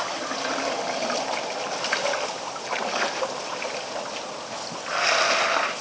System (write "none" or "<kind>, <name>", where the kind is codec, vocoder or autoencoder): none